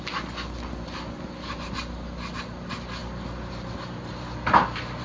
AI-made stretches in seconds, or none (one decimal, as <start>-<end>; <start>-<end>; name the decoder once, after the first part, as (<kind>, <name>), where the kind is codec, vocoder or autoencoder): none